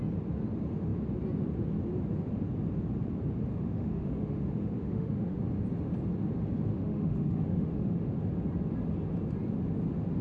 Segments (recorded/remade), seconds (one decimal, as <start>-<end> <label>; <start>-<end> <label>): 0.0-3.5 recorded; 3.5-5.4 remade; 5.4-6.7 recorded; 6.7-8.1 remade; 8.1-10.2 recorded